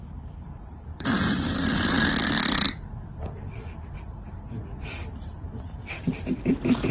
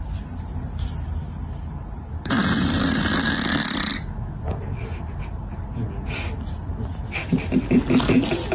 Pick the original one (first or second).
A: second